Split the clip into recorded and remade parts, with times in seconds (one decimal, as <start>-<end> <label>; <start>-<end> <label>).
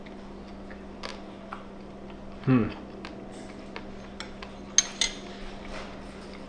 0.0-6.5 recorded